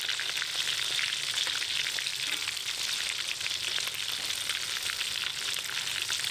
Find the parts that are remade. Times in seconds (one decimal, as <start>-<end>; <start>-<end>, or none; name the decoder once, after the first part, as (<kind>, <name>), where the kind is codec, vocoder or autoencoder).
none